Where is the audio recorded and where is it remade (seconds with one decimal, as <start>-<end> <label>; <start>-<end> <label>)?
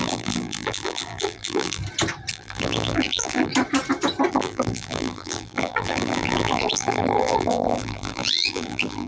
0.0-1.8 remade; 1.8-2.3 recorded; 2.3-3.5 remade; 3.5-4.3 recorded; 4.3-9.1 remade